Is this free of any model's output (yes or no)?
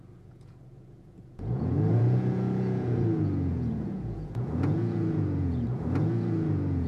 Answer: no